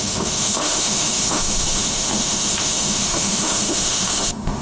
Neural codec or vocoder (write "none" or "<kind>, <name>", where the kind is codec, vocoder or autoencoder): autoencoder, DAC-VAE